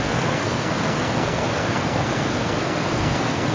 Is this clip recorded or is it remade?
remade